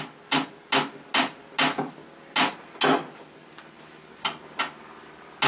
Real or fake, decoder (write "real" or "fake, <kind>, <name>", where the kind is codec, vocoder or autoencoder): real